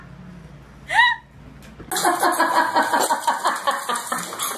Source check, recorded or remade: recorded